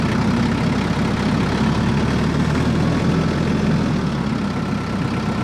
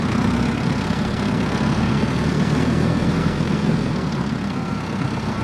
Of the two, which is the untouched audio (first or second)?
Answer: first